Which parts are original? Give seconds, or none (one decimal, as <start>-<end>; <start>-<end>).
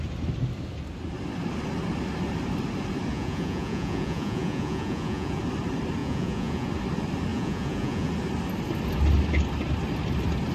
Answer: 0.0-3.1; 5.4-6.0; 6.7-7.3; 8.1-10.5